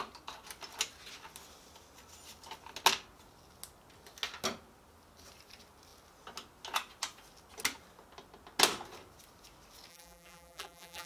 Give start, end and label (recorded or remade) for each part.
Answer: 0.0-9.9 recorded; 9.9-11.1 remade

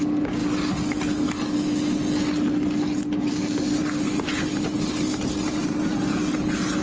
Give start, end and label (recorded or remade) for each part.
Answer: 0.0-6.8 recorded

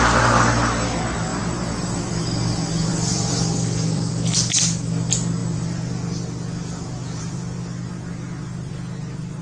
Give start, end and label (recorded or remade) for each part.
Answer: 0.0-1.3 recorded; 1.3-2.0 remade; 2.0-2.9 recorded; 2.9-4.1 remade; 4.1-5.4 recorded; 5.4-8.7 remade; 8.7-9.4 recorded

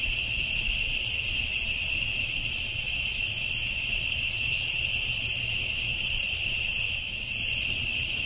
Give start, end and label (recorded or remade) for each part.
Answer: 0.0-5.9 recorded; 5.9-6.5 remade; 6.5-8.3 recorded

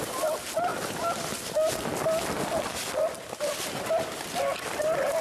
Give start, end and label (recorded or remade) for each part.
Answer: 0.0-5.2 recorded

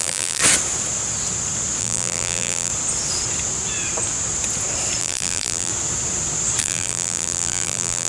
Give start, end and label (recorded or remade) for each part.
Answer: 0.0-0.4 remade; 0.4-1.8 recorded; 1.8-2.7 remade; 2.7-5.0 recorded; 5.0-5.7 remade; 5.7-6.6 recorded; 6.6-8.1 remade

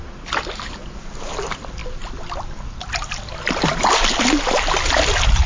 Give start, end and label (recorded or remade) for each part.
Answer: 0.0-5.5 recorded